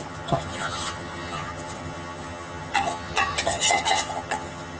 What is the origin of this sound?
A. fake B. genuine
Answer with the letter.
A